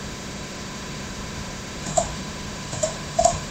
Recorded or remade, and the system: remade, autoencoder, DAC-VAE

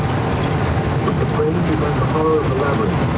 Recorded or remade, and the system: recorded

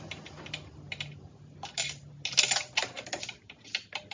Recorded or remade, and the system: recorded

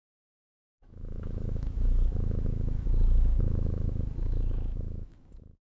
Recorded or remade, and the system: remade, autoencoder, DAC-VAE